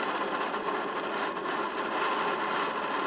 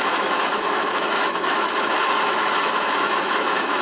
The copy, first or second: second